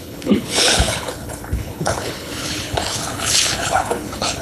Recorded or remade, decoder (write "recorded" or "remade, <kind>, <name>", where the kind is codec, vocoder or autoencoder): remade, codec, HILCodec